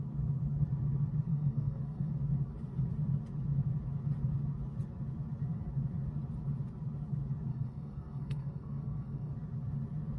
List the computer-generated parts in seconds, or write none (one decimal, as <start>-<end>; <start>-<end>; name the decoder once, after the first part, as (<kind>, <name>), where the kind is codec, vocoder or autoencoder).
1.3-2.1 (codec, SNAC); 7.5-9.3